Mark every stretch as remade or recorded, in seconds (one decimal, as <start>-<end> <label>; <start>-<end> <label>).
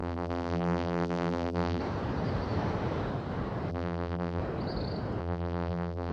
0.0-1.8 remade; 1.8-3.7 recorded; 3.7-4.4 remade; 4.4-5.2 recorded; 5.2-6.1 remade